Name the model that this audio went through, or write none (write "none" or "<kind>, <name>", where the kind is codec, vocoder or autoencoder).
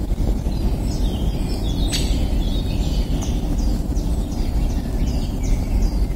none